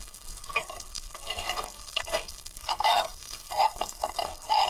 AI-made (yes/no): yes